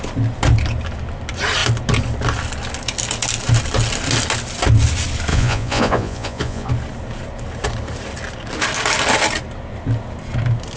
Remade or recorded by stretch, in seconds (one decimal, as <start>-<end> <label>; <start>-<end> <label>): 0.0-5.3 recorded; 5.3-6.7 remade; 6.7-10.8 recorded